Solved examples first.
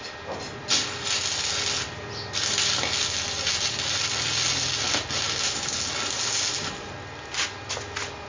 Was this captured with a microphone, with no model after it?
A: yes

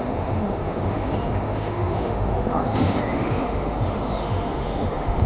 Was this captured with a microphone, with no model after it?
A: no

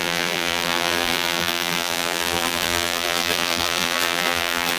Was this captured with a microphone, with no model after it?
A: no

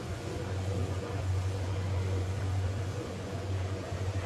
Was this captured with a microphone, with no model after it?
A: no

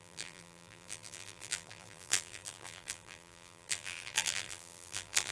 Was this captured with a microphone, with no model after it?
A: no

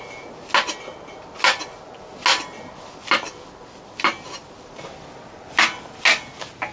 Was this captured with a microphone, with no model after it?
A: yes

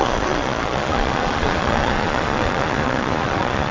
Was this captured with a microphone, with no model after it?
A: no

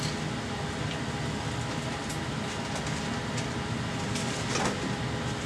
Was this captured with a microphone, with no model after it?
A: yes